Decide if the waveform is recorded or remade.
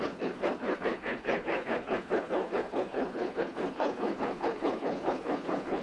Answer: remade